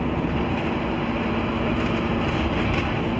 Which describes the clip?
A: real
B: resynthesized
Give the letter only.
A